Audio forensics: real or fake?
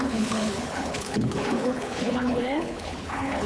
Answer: fake